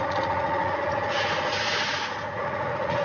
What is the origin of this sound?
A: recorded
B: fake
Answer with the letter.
B